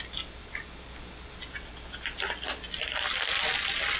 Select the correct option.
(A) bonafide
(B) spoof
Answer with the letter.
A